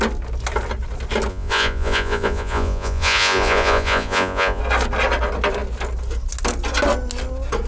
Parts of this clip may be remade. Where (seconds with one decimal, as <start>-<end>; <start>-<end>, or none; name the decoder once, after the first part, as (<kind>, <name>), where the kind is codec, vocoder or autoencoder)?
1.3-4.6 (vocoder, Vocos)